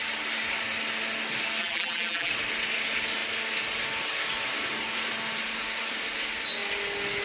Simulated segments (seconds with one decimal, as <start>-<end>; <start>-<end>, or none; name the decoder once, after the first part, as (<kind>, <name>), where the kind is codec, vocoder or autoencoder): 1.6-2.3 (vocoder, BigVGAN v2)